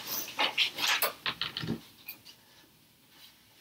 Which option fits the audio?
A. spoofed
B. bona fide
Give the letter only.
B